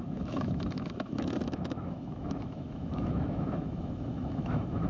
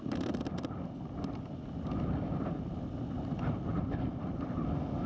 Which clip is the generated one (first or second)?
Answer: first